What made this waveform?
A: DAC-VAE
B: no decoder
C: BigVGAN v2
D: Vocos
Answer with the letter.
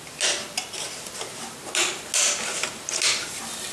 B